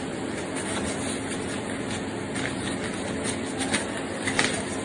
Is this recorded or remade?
recorded